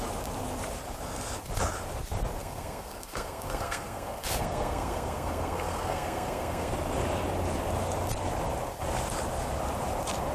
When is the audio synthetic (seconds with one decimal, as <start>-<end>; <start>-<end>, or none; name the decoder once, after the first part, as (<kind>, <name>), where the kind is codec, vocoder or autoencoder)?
2.4-6.7 (codec, SNAC)